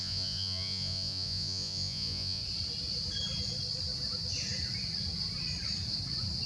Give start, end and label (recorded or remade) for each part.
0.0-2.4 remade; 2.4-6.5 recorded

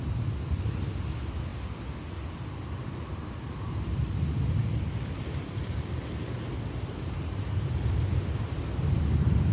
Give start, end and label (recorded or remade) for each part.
0.0-9.5 recorded